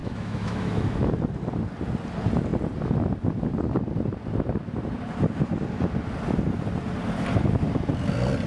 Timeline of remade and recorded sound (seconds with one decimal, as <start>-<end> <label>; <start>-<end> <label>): 0.0-1.1 remade; 1.1-8.5 recorded